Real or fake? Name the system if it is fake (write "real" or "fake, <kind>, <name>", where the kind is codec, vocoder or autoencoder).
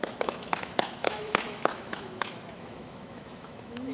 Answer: fake, autoencoder, DAC-VAE